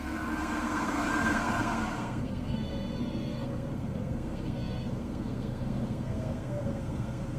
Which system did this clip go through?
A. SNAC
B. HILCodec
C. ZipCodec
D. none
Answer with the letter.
A